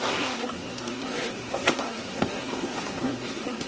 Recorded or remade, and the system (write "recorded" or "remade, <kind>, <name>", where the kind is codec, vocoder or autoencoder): remade, codec, SNAC